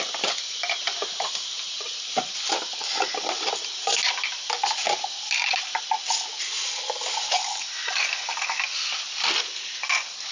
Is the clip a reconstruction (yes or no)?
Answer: no